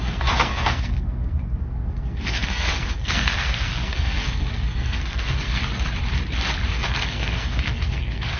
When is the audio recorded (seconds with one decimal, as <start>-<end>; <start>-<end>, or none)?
5.6-6.7